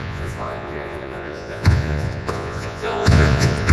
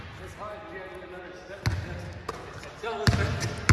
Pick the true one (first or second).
second